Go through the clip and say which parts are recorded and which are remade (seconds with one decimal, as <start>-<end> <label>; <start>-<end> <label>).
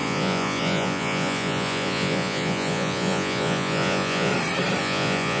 0.0-4.3 remade; 4.3-4.8 recorded; 4.8-5.4 remade